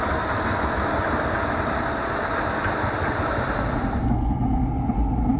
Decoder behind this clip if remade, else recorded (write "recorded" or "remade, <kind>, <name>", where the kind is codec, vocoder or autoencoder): recorded